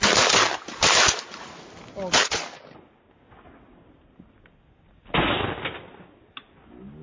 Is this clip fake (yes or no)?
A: no